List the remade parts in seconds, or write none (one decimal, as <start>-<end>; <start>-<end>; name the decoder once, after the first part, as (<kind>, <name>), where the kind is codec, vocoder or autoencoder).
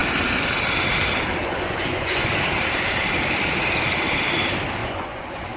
1.4-2.3 (vocoder, Vocos); 4.8-5.6